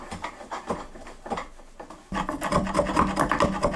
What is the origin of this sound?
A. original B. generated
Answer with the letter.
A